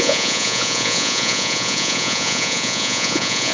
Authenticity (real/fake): fake